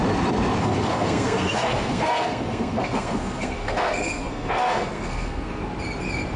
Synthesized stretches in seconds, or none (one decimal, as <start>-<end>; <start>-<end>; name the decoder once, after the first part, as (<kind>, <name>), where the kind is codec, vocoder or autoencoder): 0.6-5.6 (codec, SNAC)